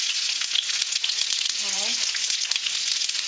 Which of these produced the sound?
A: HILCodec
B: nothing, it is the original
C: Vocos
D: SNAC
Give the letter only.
C